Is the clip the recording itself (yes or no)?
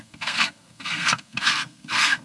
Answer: no